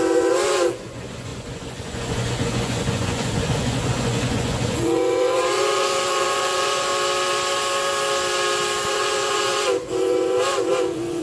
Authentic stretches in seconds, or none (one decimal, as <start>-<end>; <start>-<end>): 6.9-8.9